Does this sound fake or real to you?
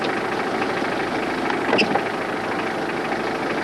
real